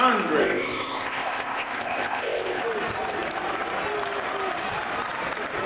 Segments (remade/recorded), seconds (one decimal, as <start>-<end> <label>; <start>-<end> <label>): 0.0-0.4 recorded; 0.4-2.6 remade; 2.6-5.7 recorded